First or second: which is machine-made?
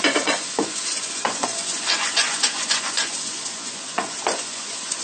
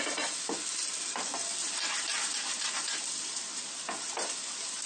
first